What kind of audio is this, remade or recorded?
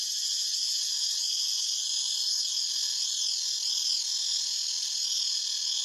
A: recorded